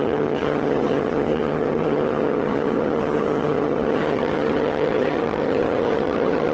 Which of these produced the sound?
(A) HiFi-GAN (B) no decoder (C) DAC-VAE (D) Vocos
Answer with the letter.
A